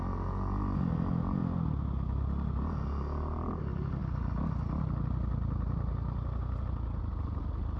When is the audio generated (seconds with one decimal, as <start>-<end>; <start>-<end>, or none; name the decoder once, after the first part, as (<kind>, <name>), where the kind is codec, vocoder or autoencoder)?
none